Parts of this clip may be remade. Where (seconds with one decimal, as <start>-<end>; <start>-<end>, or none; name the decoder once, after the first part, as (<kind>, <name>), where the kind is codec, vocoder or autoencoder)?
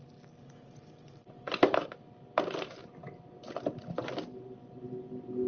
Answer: none